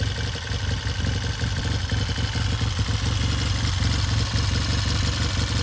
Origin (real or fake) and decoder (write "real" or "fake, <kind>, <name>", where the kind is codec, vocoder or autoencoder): real